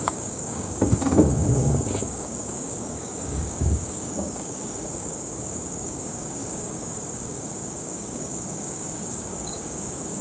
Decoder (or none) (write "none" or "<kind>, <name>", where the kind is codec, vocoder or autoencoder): codec, DAC